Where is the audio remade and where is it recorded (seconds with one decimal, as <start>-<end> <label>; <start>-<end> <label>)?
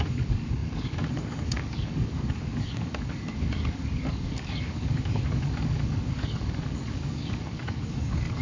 0.0-8.4 remade